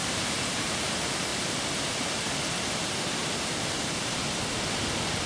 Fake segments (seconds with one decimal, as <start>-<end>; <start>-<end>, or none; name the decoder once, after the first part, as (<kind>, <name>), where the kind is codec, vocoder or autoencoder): 0.0-0.9 (vocoder, BigVGAN v2)